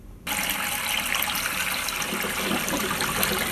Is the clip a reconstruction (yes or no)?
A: no